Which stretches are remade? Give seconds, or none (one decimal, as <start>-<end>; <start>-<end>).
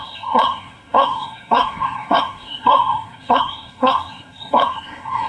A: 0.0-5.3